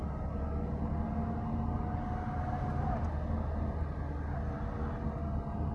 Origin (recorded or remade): recorded